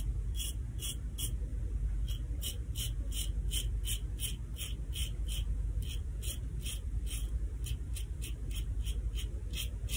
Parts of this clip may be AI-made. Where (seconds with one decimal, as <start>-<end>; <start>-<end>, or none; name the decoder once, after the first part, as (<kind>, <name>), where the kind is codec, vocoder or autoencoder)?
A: 5.0-9.0 (vocoder, BigVGAN v2)